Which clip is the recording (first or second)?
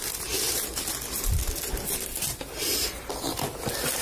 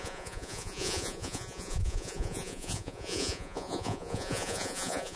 first